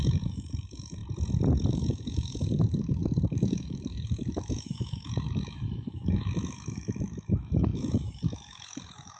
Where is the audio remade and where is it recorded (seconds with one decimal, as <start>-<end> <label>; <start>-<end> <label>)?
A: 0.0-1.0 remade; 1.0-1.7 recorded; 1.7-9.2 remade

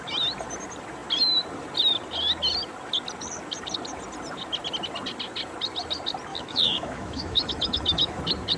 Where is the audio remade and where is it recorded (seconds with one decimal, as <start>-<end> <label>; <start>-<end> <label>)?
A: 0.0-6.3 recorded; 6.3-8.2 remade; 8.2-8.6 recorded

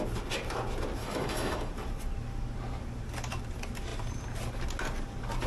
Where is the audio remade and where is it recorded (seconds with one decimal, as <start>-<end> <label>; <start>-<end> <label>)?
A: 0.0-1.0 recorded; 1.0-1.7 remade; 1.7-5.5 recorded

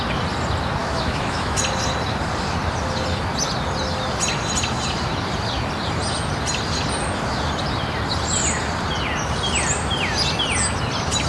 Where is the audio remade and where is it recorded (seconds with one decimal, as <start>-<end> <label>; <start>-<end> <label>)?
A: 0.0-0.8 recorded; 0.8-1.6 remade; 1.6-11.3 recorded

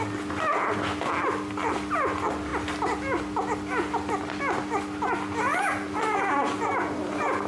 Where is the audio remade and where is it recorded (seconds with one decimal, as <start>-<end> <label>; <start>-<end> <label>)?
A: 0.0-7.5 recorded

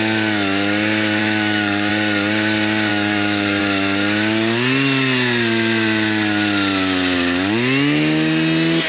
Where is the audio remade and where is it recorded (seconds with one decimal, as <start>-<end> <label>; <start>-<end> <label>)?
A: 0.0-1.2 recorded; 1.2-1.9 remade; 1.9-2.9 recorded; 2.9-3.6 remade; 3.6-8.9 recorded

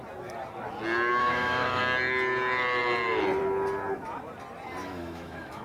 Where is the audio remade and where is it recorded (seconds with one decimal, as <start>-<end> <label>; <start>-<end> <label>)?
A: 0.0-1.2 recorded; 1.2-1.8 remade; 1.8-4.8 recorded; 4.8-5.6 remade

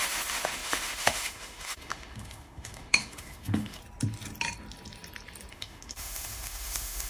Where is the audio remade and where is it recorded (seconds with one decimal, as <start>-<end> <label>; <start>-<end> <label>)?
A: 0.0-3.8 remade; 3.8-5.5 recorded; 5.5-7.1 remade